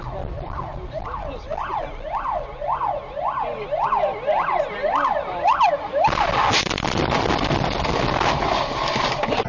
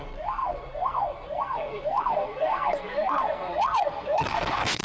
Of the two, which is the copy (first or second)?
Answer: second